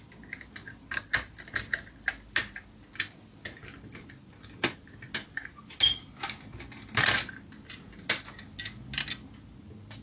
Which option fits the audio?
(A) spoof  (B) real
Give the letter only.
B